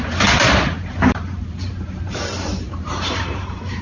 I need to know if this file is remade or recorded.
remade